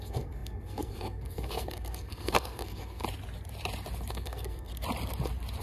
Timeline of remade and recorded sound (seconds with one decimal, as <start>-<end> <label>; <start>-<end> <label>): 0.0-3.0 remade; 3.0-4.1 recorded; 4.1-4.7 remade; 4.7-5.6 recorded